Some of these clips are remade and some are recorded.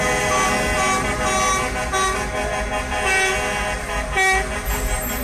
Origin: recorded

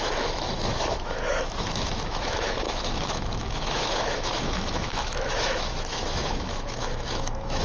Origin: remade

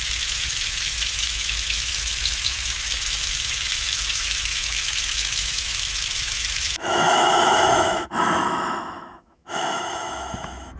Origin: remade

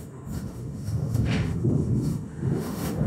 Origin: remade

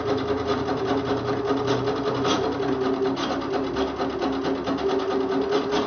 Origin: recorded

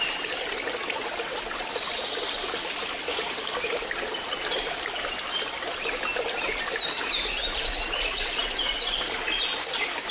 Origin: recorded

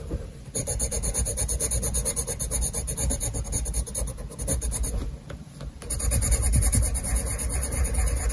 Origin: recorded